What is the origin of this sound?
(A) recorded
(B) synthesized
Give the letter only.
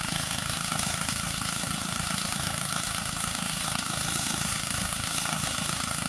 B